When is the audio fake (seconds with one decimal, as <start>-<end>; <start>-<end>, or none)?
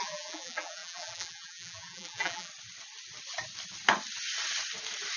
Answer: 0.0-2.5